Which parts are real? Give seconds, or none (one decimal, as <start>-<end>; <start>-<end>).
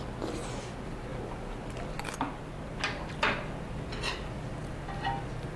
0.0-5.6